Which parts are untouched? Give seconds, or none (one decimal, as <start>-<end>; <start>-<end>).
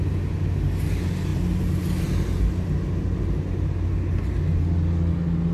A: 0.0-5.5